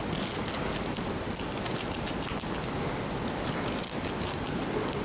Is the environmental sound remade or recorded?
recorded